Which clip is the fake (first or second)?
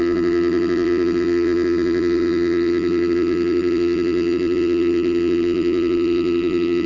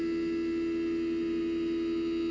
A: first